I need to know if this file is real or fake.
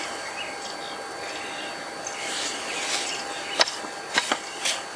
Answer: real